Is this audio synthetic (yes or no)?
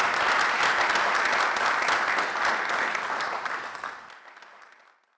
no